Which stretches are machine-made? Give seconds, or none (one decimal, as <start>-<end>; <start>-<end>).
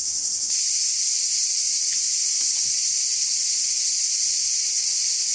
none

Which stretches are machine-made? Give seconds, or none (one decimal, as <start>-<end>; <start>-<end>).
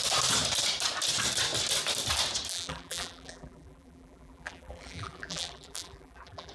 2.5-6.5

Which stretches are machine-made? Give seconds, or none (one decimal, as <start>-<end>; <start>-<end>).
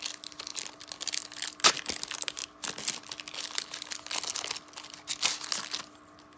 none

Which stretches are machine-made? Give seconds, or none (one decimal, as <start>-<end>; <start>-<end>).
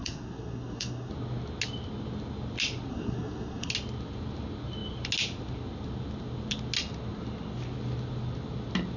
0.0-1.1; 2.9-3.7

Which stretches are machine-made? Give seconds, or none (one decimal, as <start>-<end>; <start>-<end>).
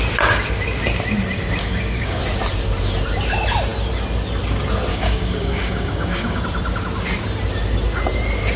1.6-2.2; 4.9-6.4